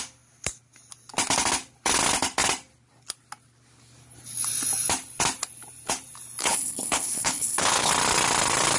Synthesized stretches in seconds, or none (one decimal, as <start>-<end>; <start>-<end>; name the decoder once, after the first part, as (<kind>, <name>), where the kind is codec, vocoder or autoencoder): 6.4-7.9 (codec, HILCodec)